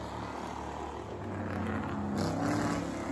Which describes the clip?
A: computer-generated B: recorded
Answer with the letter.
B